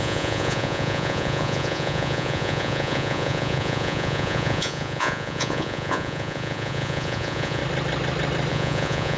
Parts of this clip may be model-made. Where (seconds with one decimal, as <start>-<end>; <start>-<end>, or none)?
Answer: 0.0-7.6; 8.5-9.2